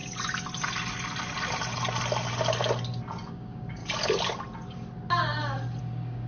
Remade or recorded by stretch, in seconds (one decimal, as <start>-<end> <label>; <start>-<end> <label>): 0.0-3.3 recorded; 3.3-3.8 remade; 3.8-5.8 recorded; 5.8-6.3 remade